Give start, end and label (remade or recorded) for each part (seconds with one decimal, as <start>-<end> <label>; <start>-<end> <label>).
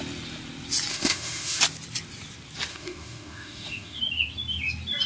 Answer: 0.0-0.9 recorded; 0.9-1.6 remade; 1.6-2.7 recorded; 2.7-4.0 remade; 4.0-5.1 recorded